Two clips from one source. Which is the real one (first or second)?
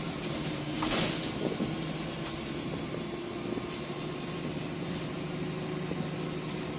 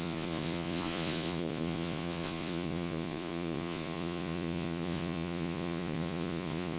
first